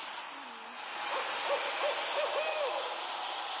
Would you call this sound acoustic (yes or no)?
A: yes